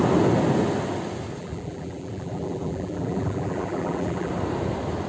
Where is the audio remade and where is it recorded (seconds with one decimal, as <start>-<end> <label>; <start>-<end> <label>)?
0.0-1.4 recorded; 1.4-4.3 remade; 4.3-5.1 recorded

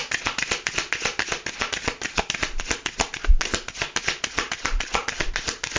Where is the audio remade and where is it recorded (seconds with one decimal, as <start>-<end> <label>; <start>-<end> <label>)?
0.0-5.8 recorded

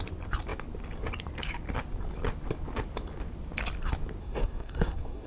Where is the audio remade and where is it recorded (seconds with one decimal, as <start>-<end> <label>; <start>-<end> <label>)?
0.0-4.2 recorded; 4.2-5.3 remade